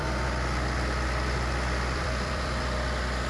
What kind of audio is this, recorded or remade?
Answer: remade